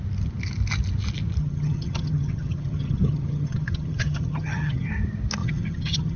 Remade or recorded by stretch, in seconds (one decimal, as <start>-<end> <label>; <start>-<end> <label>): 0.0-1.4 recorded; 1.4-4.9 remade; 4.9-5.4 recorded; 5.4-6.2 remade